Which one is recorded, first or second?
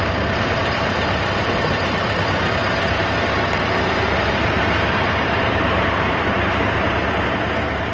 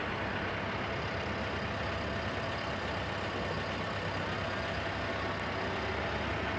second